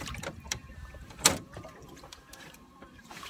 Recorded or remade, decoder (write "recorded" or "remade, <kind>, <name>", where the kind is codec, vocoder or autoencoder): remade, vocoder, BigVGAN v2